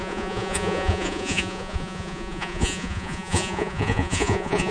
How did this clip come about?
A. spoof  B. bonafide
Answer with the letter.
A